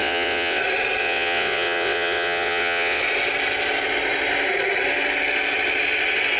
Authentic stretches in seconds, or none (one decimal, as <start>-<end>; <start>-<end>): 0.6-1.0; 3.0-6.4